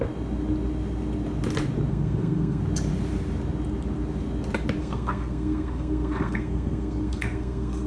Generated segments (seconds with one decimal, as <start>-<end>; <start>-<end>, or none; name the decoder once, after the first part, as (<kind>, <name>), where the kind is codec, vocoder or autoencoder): 1.9-2.6 (codec, SNAC); 4.8-7.9